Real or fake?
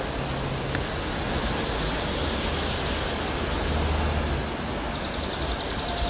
real